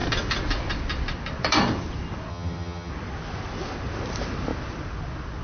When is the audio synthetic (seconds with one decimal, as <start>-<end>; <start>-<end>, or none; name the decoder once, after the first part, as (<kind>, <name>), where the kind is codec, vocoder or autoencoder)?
2.3-2.9 (vocoder, HiFi-GAN)